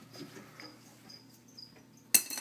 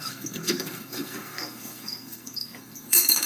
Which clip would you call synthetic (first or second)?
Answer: second